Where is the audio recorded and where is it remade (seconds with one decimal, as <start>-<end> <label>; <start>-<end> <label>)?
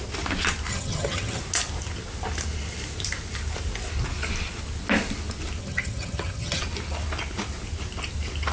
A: 0.0-0.7 recorded; 0.7-1.4 remade; 1.4-5.6 recorded; 5.6-6.6 remade; 6.6-8.5 recorded